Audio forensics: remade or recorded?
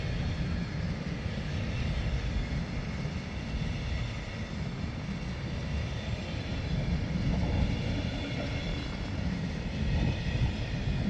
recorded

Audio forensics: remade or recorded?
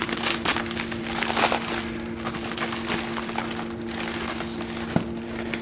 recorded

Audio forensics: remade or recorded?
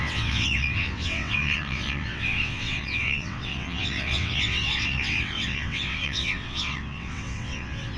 remade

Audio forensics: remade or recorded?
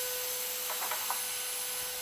recorded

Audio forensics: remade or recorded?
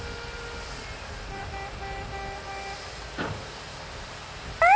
recorded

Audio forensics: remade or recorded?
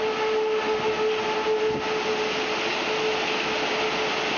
recorded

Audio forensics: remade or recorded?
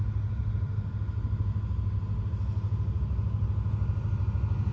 recorded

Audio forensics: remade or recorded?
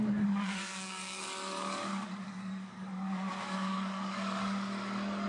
remade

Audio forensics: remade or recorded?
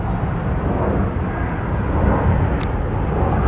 recorded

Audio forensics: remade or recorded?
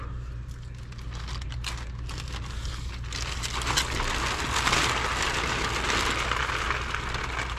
recorded